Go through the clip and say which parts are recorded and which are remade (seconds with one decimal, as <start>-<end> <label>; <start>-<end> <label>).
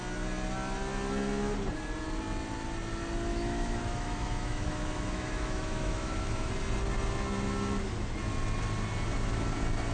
0.0-3.3 recorded; 3.3-6.5 remade; 6.5-9.9 recorded